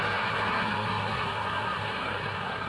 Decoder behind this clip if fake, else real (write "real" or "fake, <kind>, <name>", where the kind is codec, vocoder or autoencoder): fake, codec, SNAC